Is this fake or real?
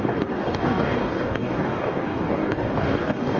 fake